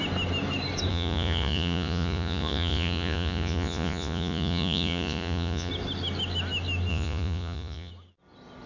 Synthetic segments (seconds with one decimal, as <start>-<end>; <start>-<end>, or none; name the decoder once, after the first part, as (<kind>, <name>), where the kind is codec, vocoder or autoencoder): 0.9-5.7 (vocoder, Vocos); 6.9-7.9